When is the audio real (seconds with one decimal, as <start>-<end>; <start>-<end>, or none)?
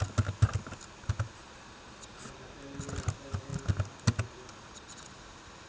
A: 0.0-1.4; 2.2-4.5; 5.2-5.7